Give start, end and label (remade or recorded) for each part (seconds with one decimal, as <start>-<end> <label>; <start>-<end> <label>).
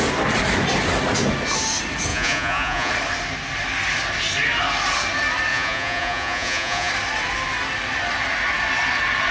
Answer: 0.0-2.1 recorded; 2.1-2.9 remade; 2.9-5.5 recorded; 5.5-6.9 remade; 6.9-9.3 recorded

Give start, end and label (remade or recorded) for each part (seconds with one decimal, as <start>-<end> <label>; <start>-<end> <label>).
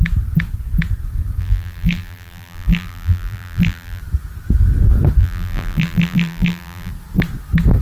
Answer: 0.0-1.4 recorded; 1.4-4.0 remade; 4.0-5.2 recorded; 5.2-6.9 remade; 6.9-7.8 recorded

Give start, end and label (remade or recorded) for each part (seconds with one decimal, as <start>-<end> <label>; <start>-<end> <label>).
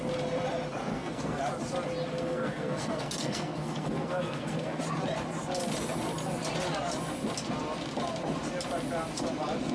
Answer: 0.0-0.9 recorded; 0.9-1.4 remade; 1.4-2.1 recorded; 2.1-4.8 remade; 4.8-9.7 recorded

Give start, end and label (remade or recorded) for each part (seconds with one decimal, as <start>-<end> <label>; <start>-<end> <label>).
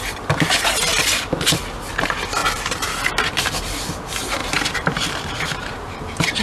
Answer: 0.0-2.4 recorded; 2.4-3.0 remade; 3.0-4.4 recorded; 4.4-6.4 remade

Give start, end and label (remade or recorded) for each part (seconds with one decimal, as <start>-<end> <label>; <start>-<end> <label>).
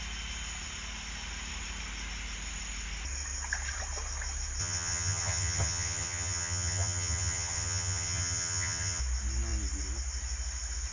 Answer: 0.0-4.6 recorded; 4.6-9.0 remade; 9.0-10.9 recorded